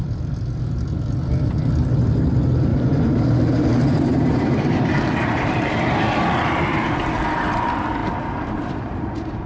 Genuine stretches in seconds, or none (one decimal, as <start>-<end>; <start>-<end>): 0.0-2.7; 3.2-3.7; 5.7-8.0

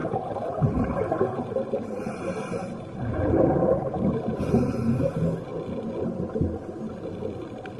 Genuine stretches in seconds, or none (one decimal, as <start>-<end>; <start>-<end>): 4.4-7.8

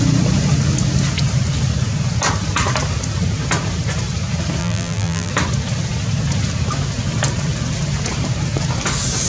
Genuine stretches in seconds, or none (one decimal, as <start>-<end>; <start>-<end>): 0.0-4.6; 5.3-9.3

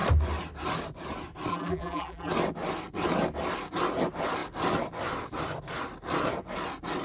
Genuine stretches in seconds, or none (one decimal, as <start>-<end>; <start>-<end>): 0.0-1.5; 2.3-7.0

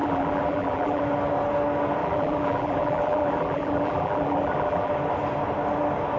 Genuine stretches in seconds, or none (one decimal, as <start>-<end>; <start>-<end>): 1.0-2.0; 4.9-6.2